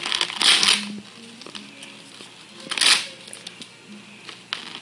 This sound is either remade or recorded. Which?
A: recorded